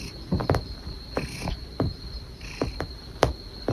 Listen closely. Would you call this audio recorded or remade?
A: recorded